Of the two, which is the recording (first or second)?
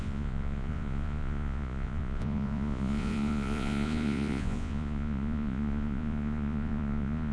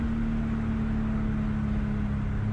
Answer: second